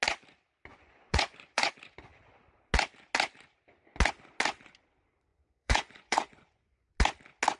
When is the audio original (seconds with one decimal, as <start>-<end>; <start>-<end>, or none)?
0.0-0.7; 1.7-5.3; 6.9-7.6